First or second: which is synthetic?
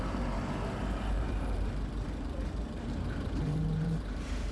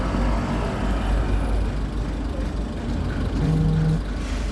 first